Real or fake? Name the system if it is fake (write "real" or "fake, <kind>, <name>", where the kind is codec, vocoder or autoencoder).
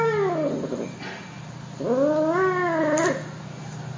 real